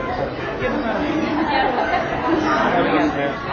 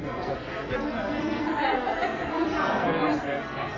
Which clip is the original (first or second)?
first